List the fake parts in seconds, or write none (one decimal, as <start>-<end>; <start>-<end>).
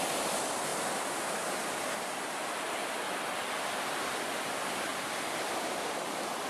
0.7-3.2; 4.9-5.5